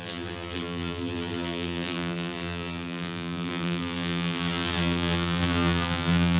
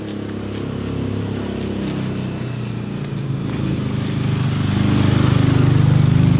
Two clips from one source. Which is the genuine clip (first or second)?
second